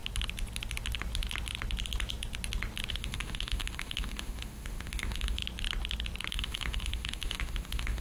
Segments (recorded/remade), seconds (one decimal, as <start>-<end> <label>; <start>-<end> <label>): 0.0-2.9 recorded; 2.9-5.4 remade; 5.4-6.3 recorded; 6.3-8.0 remade